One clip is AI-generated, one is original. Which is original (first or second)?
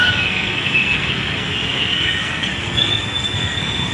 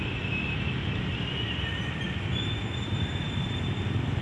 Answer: second